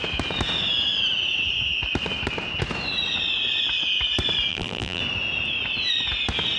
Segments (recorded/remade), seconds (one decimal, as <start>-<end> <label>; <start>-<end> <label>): 0.0-4.5 recorded; 4.5-5.0 remade; 5.0-6.6 recorded